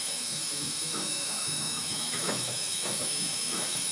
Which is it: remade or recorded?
remade